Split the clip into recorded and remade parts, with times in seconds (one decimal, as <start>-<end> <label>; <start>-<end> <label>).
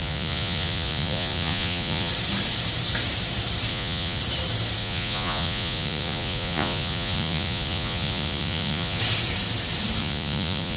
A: 0.0-2.1 remade; 2.1-3.7 recorded; 3.7-4.2 remade; 4.2-4.8 recorded; 4.8-9.0 remade; 9.0-10.0 recorded; 10.0-10.8 remade